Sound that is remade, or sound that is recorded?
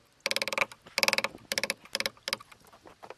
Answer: recorded